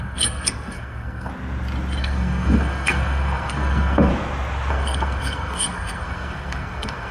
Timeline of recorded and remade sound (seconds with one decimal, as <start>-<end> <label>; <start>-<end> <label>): 0.0-1.3 remade; 1.3-2.0 recorded; 2.0-4.1 remade; 4.1-4.7 recorded; 4.7-7.1 remade